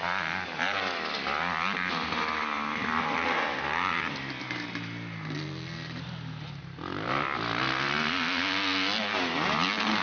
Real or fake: real